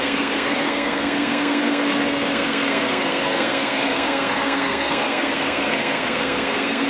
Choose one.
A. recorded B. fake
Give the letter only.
B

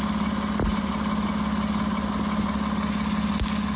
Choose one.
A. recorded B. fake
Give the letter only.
A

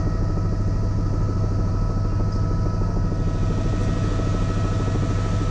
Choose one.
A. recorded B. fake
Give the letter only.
A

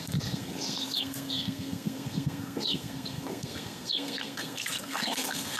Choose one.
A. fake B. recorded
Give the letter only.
A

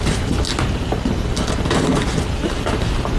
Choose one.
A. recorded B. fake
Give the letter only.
A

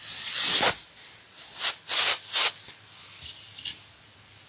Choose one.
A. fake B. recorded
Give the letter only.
B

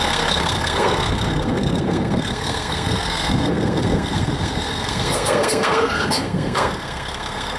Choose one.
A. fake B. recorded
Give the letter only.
A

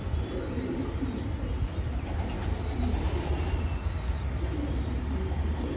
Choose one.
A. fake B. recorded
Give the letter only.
B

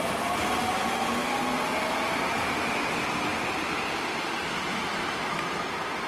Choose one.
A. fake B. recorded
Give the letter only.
B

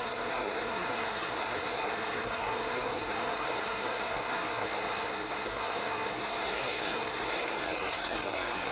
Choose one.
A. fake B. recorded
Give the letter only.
A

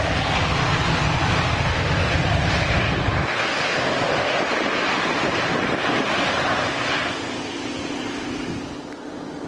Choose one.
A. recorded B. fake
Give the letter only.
A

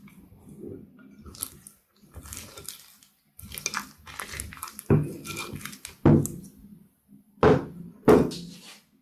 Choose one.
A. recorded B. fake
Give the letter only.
A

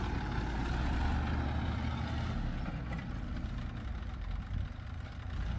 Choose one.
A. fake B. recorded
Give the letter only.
B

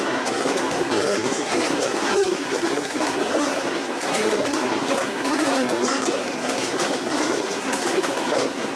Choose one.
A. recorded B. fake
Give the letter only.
B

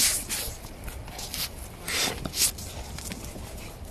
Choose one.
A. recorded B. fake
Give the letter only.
A